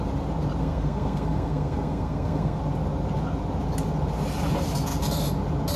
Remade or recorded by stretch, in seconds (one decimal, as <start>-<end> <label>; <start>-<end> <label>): 0.0-0.6 recorded; 0.6-2.6 remade; 2.6-5.8 recorded